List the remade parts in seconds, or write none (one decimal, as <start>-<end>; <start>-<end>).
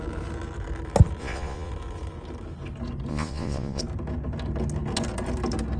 1.2-1.7; 3.1-3.8